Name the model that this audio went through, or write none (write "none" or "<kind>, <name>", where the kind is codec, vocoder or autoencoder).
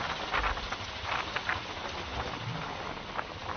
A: none